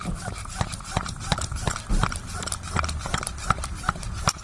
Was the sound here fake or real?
fake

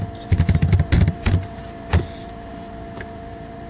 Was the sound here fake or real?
fake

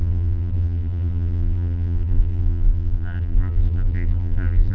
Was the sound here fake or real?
fake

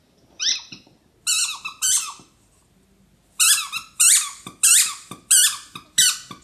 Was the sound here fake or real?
real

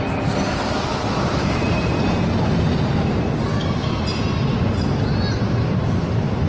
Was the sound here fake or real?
real